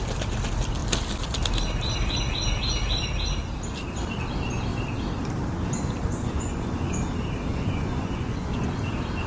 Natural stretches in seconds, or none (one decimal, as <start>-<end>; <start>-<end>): 0.0-6.0; 7.0-7.5; 8.7-9.3